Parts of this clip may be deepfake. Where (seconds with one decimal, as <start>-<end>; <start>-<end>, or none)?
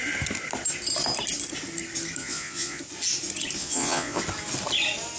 2.2-2.8; 3.6-4.2